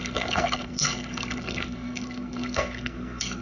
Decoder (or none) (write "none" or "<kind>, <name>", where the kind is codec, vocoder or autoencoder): codec, SNAC